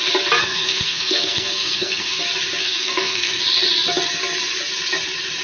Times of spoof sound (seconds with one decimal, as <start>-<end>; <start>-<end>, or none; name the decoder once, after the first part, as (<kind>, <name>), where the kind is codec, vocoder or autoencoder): 0.4-2.2 (codec, SNAC); 2.6-3.4